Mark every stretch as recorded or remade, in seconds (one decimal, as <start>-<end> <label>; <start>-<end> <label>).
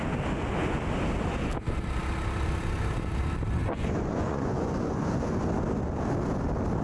0.0-3.6 recorded; 3.6-5.4 remade; 5.4-6.8 recorded